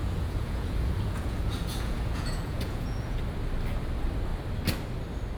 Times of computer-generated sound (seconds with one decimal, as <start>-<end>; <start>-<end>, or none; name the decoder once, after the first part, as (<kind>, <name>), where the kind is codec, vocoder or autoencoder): 0.0-3.2 (vocoder, Vocos)